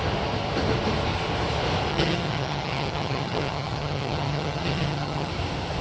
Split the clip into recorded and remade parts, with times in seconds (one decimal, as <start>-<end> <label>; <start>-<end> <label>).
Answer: 0.0-1.9 recorded; 1.9-5.3 remade; 5.3-5.8 recorded